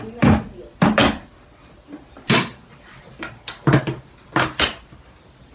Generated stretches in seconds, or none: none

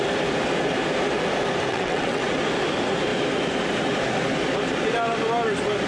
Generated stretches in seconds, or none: 1.7-2.2 (vocoder, WaveNeXt)

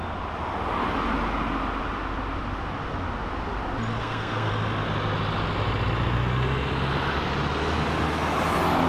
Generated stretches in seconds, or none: 4.0-4.5 (codec, SNAC)

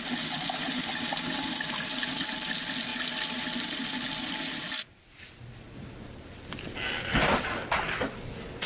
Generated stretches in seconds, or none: none

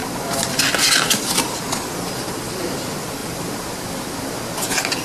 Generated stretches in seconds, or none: none

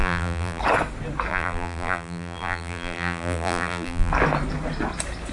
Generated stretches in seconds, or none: 0.0-0.6 (vocoder, BigVGAN v2); 1.3-4.1